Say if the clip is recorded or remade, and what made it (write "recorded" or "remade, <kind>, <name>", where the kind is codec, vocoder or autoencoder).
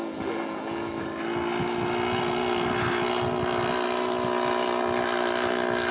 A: recorded